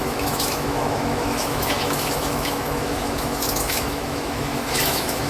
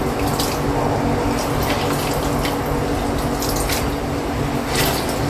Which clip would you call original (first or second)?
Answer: second